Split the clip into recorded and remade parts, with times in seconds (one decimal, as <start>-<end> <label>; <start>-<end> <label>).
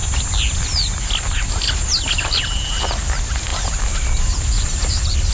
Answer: 0.0-5.3 recorded